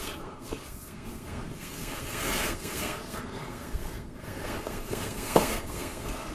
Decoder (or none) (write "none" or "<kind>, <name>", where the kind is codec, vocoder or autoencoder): codec, SNAC